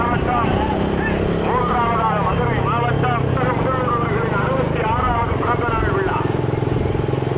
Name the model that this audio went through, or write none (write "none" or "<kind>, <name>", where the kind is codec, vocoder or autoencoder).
none